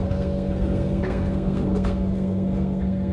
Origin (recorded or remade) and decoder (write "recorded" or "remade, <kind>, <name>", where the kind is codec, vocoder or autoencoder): remade, codec, SNAC